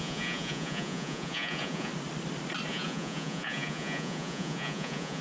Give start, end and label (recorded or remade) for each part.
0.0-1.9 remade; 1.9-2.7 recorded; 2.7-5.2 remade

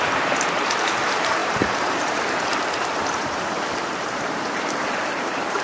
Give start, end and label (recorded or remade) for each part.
0.0-2.5 remade; 2.5-3.2 recorded; 3.2-5.6 remade

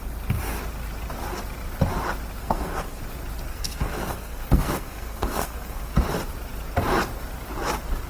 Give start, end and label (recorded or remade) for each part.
0.0-2.4 recorded; 2.4-3.0 remade; 3.0-3.5 recorded; 3.5-5.9 remade; 5.9-8.1 recorded

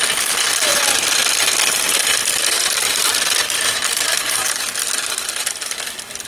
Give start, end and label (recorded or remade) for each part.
0.0-0.7 remade; 0.7-2.2 recorded; 2.2-3.0 remade; 3.0-4.2 recorded; 4.2-6.3 remade

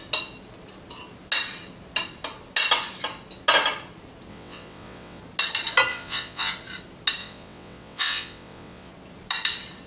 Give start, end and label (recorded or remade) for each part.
0.0-4.3 recorded; 4.3-5.2 remade; 5.2-5.9 recorded; 5.9-6.5 remade; 6.5-7.2 recorded; 7.2-8.9 remade; 8.9-9.9 recorded

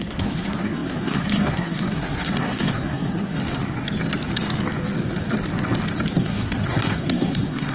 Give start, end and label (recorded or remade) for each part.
0.0-3.4 remade; 3.4-6.1 recorded; 6.1-7.7 remade

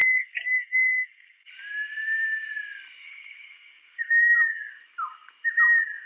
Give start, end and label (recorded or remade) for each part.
0.0-1.5 remade; 1.5-3.0 recorded; 3.0-4.7 remade; 4.7-6.1 recorded

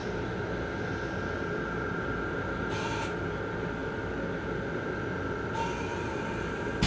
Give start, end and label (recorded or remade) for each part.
0.0-6.9 recorded